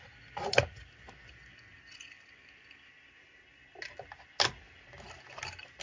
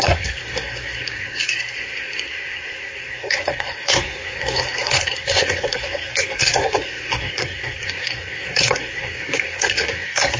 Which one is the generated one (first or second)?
second